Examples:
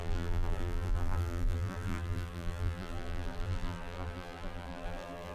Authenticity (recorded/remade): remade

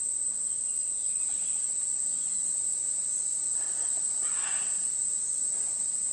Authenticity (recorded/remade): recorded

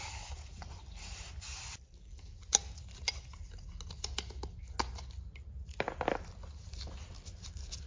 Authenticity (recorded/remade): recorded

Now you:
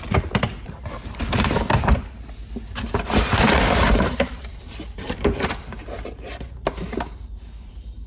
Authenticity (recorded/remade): remade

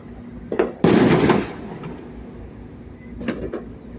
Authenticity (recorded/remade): recorded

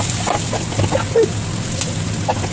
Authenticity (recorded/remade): recorded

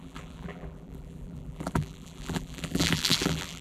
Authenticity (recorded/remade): remade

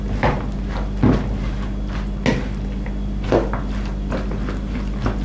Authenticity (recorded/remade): recorded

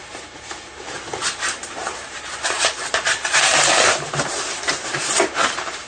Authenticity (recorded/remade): remade